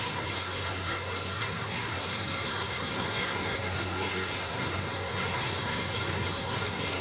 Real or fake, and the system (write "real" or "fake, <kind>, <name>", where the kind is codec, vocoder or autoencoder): fake, codec, SNAC